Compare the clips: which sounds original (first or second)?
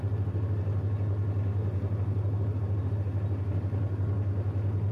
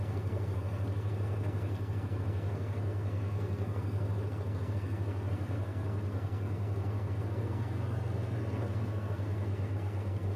first